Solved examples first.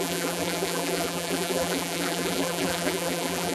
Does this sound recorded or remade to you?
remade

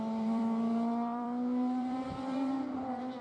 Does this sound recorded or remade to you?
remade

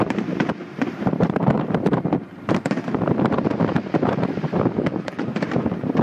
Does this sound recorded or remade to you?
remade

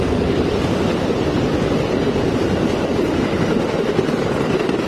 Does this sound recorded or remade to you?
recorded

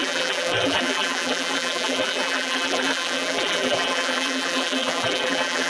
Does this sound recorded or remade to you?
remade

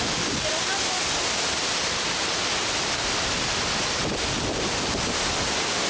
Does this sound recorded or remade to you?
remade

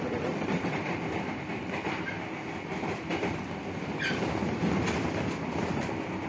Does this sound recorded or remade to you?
remade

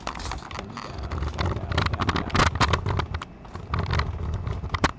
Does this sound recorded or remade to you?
recorded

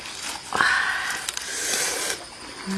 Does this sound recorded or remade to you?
recorded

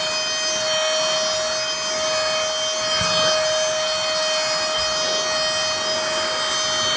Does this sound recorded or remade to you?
recorded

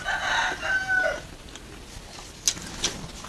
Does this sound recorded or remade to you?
recorded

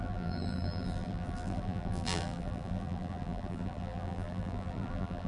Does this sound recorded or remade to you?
remade